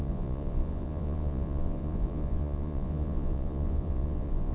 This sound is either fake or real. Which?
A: fake